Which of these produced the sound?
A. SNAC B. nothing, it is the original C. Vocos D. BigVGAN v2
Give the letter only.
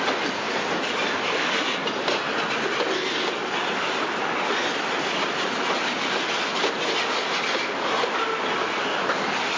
B